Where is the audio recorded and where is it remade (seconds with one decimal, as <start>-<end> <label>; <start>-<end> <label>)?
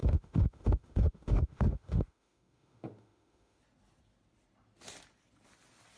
0.0-3.6 remade; 3.6-6.0 recorded